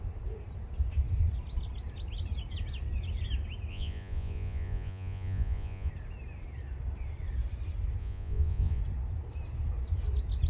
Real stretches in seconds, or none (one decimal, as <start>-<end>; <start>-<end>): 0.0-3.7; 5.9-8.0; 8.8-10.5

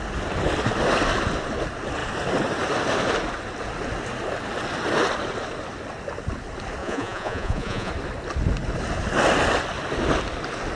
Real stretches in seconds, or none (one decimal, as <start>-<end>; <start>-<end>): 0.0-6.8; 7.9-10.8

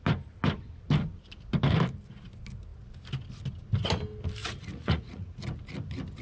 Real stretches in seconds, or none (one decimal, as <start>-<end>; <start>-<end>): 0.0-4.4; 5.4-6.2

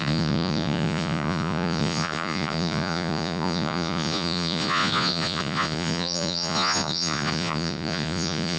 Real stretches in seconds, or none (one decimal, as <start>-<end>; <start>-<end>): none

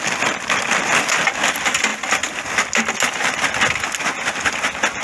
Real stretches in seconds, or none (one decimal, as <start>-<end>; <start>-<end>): 0.0-5.0

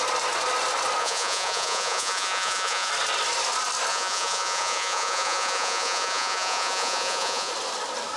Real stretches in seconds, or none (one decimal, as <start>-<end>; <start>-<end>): 0.0-1.0; 2.9-3.9; 7.5-8.2

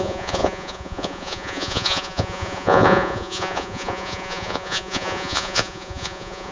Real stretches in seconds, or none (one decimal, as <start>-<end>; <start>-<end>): none